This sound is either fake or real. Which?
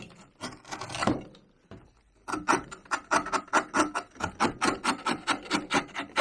real